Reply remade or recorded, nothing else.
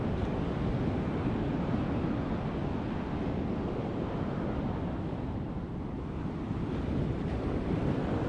recorded